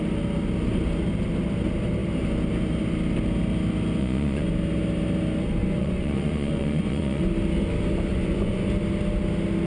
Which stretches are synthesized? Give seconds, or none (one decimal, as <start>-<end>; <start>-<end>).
4.0-4.5; 5.6-7.3; 8.1-8.7